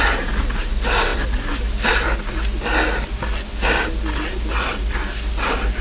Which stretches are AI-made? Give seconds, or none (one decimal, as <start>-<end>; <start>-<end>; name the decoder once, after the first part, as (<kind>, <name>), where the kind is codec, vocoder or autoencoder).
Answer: none